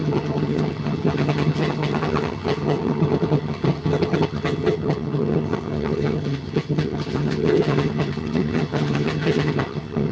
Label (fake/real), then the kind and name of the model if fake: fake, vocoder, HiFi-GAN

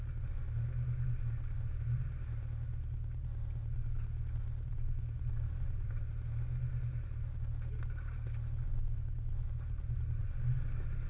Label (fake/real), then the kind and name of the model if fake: real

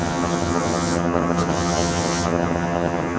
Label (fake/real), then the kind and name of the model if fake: fake, vocoder, HiFi-GAN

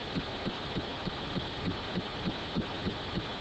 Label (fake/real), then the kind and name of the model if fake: real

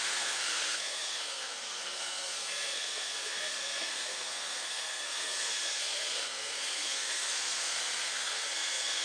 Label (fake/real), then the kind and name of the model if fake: fake, codec, SNAC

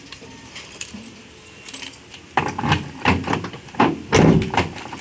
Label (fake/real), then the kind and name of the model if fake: real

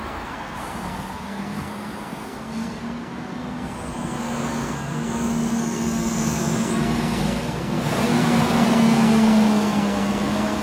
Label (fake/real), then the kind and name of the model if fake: fake, codec, SNAC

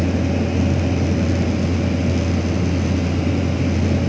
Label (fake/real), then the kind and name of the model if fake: real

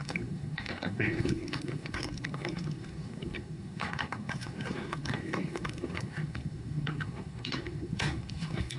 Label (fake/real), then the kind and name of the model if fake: fake, codec, SNAC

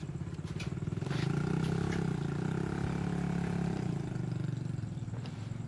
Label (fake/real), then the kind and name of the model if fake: real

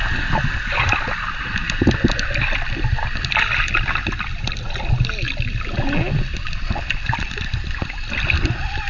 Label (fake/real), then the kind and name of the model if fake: real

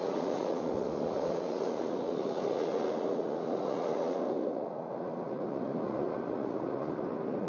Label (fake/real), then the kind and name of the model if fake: fake, vocoder, Vocos